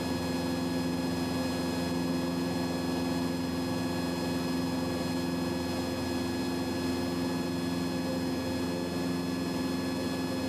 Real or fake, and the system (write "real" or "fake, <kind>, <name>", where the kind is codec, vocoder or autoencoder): real